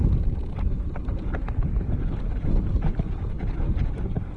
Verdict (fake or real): real